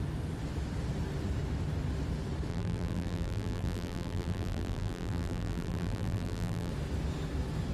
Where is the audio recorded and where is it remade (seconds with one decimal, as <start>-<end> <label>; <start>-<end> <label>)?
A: 0.0-2.5 recorded; 2.5-6.7 remade; 6.7-7.7 recorded